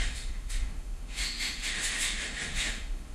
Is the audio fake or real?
fake